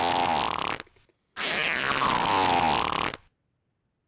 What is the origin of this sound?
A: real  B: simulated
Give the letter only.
A